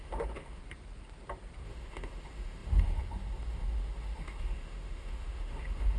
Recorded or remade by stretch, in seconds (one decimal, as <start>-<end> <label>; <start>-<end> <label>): 0.0-0.6 remade; 0.6-1.6 recorded; 1.6-6.0 remade